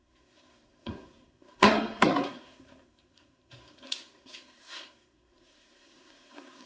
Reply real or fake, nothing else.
fake